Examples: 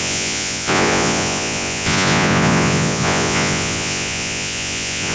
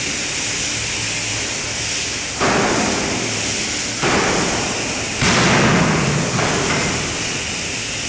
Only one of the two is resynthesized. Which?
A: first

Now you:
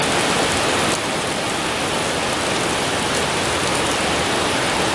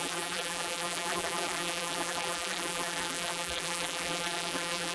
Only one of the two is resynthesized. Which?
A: second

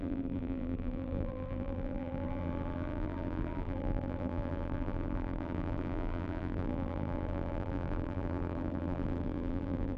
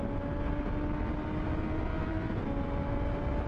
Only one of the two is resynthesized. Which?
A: first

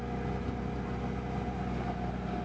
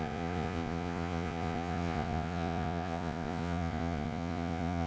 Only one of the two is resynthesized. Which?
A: second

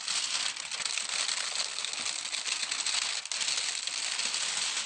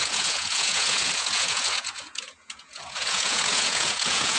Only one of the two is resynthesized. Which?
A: second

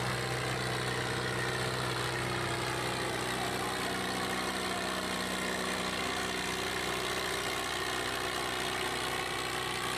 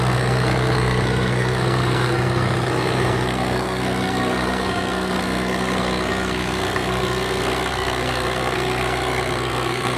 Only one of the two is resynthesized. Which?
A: second